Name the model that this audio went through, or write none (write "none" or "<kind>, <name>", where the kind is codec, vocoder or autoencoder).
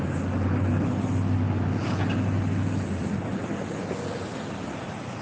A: none